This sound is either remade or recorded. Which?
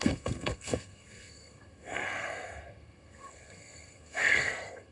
remade